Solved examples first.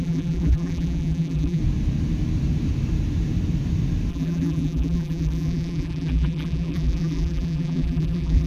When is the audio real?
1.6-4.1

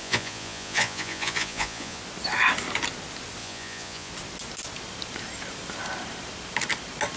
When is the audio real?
2.0-3.4; 4.1-7.2

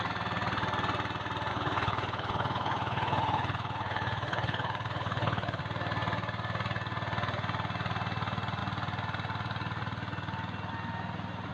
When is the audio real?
0.0-1.5; 5.6-11.5

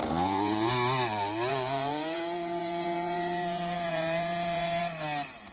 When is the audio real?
0.7-1.5; 4.8-5.5

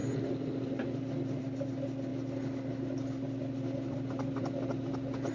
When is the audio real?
0.0-2.1